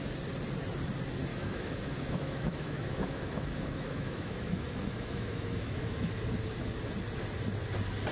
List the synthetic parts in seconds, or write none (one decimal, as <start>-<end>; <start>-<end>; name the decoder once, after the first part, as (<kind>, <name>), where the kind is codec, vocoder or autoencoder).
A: 1.3-6.1 (autoencoder, DAC-VAE)